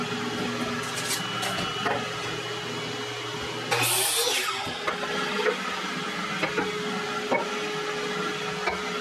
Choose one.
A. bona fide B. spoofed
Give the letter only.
A